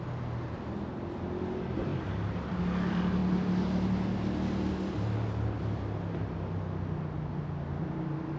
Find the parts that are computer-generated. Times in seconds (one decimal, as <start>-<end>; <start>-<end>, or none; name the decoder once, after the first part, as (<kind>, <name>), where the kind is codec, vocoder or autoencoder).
none